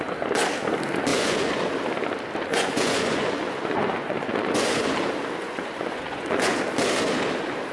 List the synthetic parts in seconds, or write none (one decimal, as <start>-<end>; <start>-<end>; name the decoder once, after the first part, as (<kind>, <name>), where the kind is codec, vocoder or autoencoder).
1.1-1.7 (vocoder, Vocos); 2.5-4.9; 5.4-6.6